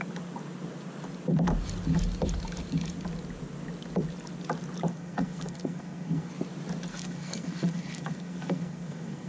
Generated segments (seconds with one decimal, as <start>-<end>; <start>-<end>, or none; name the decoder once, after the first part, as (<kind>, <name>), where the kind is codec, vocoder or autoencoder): 4.9-6.3 (codec, SNAC); 6.9-9.3